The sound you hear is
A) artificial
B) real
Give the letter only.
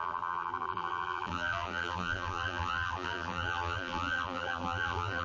A